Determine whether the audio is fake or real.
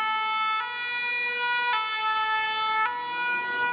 real